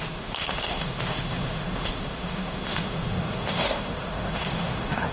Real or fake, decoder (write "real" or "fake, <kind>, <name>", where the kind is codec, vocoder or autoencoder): fake, autoencoder, DAC-VAE